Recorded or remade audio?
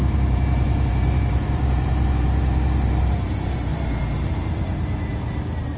remade